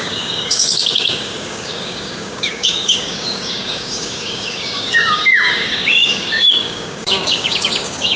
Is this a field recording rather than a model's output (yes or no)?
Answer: no